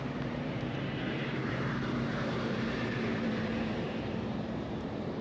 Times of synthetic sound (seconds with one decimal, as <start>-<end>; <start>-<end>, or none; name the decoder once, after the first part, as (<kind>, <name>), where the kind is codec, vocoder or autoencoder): 0.0-5.2 (vocoder, BigVGAN v2)